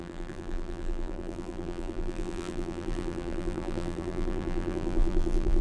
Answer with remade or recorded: remade